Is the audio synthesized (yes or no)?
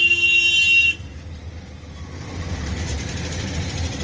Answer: yes